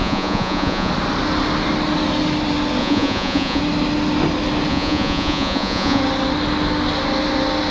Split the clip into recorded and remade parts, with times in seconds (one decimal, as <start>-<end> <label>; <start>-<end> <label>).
0.0-0.9 remade; 0.9-2.8 recorded; 2.8-3.6 remade; 3.6-4.7 recorded; 4.7-6.0 remade; 6.0-7.7 recorded